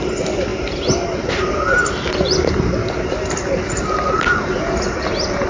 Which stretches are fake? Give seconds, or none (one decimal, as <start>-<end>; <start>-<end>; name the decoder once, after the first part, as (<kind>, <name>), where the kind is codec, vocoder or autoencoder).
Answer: none